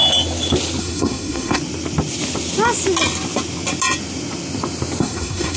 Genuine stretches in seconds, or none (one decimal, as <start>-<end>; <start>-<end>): 0.0-0.8; 1.6-5.0